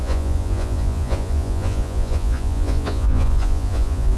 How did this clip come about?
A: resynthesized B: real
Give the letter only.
A